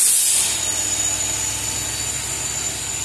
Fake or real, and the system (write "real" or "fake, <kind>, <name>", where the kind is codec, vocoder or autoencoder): real